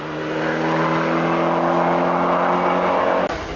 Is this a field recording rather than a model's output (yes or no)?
yes